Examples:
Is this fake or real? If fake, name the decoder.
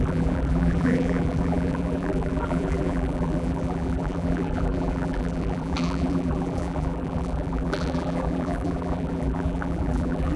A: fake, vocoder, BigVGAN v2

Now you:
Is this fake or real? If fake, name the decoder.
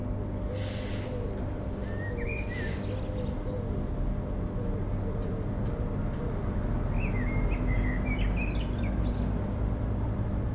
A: real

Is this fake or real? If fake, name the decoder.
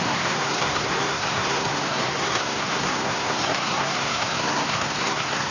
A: fake, codec, SNAC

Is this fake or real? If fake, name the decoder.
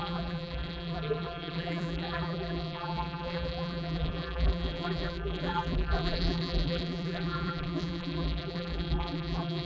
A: fake, vocoder, BigVGAN v2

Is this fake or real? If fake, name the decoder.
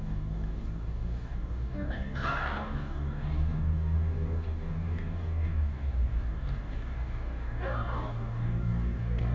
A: fake, codec, DAC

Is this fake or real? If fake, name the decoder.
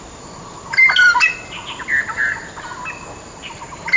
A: real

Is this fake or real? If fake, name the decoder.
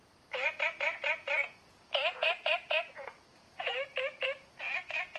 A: fake, vocoder, Vocos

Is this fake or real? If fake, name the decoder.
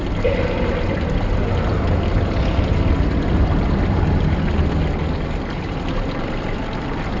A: real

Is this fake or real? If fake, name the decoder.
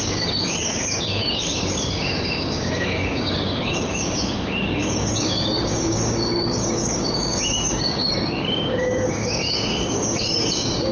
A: fake, codec, DAC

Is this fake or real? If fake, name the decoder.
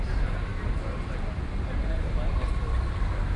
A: real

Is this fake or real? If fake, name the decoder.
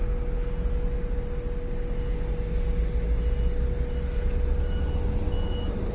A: real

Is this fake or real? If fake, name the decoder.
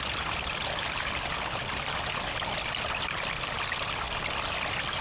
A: real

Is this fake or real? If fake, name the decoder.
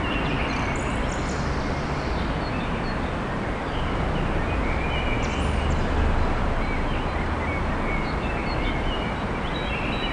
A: real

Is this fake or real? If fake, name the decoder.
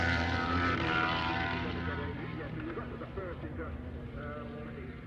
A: fake, vocoder, BigVGAN v2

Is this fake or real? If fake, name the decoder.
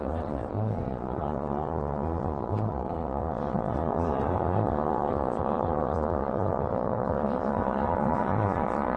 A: fake, vocoder, Vocos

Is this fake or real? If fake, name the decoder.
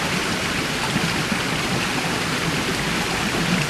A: real